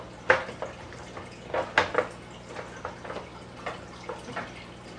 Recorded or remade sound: recorded